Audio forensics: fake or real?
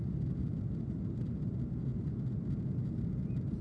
fake